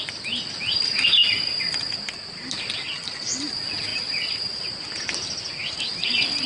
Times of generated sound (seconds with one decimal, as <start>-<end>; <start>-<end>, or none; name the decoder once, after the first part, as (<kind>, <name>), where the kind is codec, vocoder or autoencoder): none